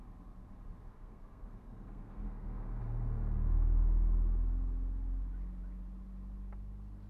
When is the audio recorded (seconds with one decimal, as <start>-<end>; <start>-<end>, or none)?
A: 0.0-0.9; 2.8-7.1